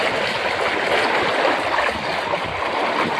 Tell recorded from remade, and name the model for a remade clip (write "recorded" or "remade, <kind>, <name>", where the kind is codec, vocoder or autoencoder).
recorded